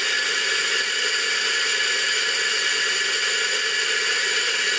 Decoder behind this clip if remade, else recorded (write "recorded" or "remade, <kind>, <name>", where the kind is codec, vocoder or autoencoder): recorded